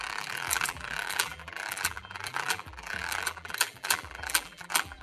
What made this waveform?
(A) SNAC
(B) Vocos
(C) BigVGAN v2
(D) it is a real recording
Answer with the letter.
C